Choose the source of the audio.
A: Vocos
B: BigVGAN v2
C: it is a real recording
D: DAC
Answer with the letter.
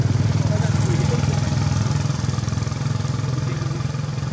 C